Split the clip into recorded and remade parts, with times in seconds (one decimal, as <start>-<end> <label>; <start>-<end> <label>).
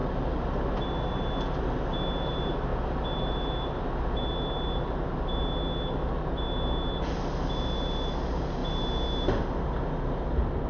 0.0-10.7 recorded